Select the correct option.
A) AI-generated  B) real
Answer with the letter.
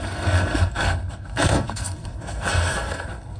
A